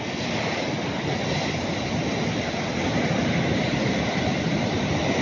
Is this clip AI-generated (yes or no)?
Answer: no